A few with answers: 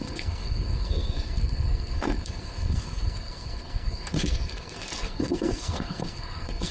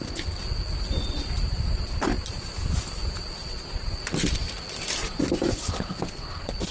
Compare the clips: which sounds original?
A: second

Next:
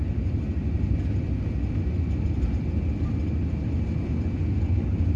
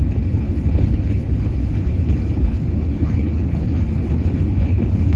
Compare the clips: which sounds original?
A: first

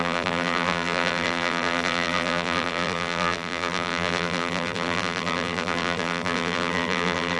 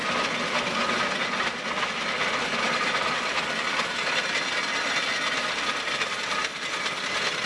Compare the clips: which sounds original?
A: second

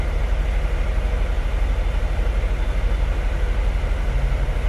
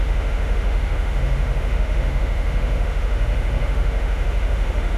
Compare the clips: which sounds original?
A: first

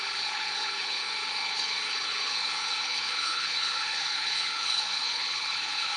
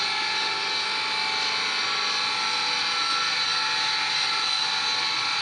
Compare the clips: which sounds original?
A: second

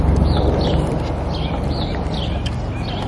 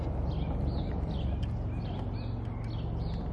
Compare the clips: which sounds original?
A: second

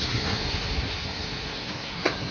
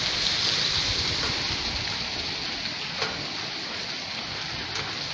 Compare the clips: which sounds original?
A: second